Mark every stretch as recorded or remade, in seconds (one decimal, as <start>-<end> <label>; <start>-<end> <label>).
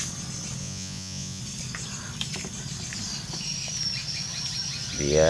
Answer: 0.0-0.6 recorded; 0.6-1.4 remade; 1.4-5.3 recorded